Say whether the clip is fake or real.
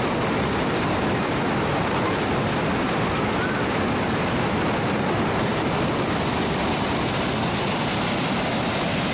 real